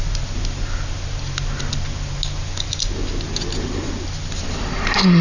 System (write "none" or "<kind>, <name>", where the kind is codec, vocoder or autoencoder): none